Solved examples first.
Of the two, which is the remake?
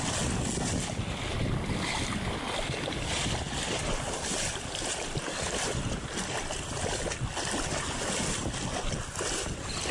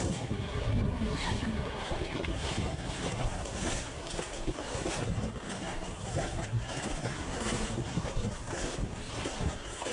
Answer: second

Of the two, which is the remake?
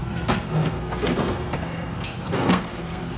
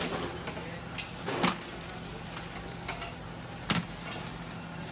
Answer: first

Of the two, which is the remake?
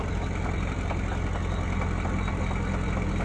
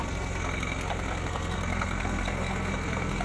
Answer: second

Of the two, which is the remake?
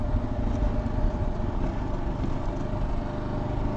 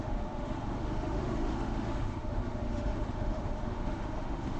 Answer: second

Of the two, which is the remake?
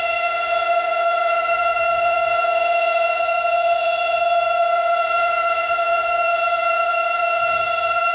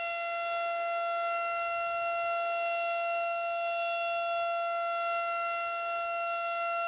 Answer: first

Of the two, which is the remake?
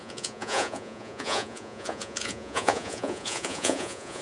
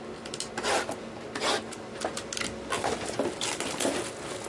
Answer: first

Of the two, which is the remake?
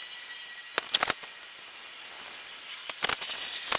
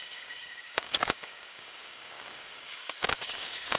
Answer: second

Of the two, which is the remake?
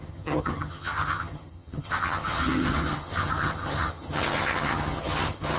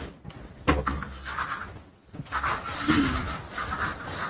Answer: first